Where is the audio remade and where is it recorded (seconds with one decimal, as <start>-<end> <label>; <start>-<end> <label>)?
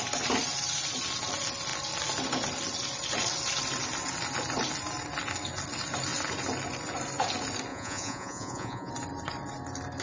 0.0-7.7 recorded; 7.7-8.9 remade; 8.9-10.0 recorded